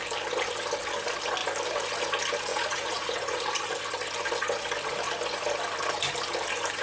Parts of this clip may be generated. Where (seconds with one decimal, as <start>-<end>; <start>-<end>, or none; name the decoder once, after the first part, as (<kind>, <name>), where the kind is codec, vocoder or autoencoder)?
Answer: 2.5-3.4 (vocoder, Vocos)